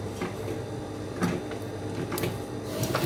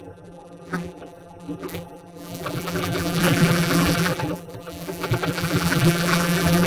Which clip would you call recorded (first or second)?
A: first